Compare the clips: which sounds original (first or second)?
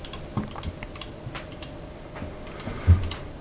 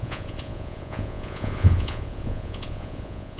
first